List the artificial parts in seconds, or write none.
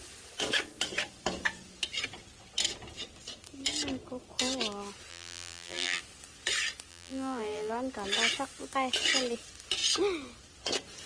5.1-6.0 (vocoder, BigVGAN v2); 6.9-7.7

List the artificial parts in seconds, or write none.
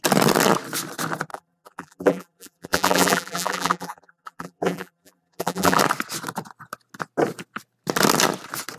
1.3-5.8 (vocoder, BigVGAN v2)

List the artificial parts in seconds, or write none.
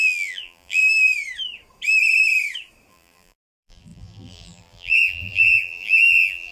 0.0-0.8 (vocoder, BigVGAN v2); 2.9-6.5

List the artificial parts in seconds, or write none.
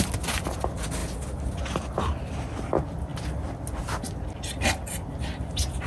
none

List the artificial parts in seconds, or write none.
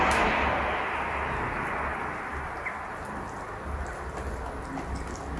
none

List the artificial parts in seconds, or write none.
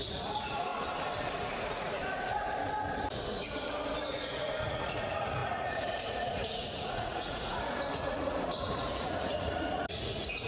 0.0-0.7 (vocoder, Vocos); 1.7-2.5; 4.1-10.5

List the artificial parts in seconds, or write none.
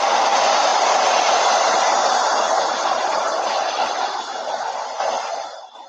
none